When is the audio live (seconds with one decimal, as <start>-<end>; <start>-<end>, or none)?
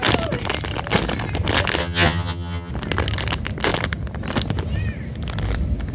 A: 0.0-1.8; 2.7-5.9